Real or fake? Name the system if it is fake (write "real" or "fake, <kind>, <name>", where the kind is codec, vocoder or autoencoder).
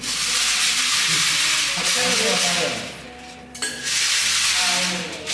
real